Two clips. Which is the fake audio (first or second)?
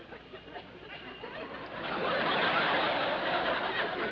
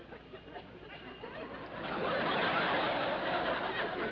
first